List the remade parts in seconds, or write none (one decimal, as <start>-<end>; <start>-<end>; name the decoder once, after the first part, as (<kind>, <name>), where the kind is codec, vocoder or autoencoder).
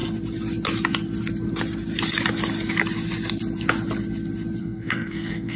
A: 4.6-5.6 (codec, SNAC)